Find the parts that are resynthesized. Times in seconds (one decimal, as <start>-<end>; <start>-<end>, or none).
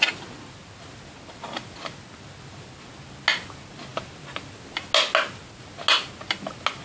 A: none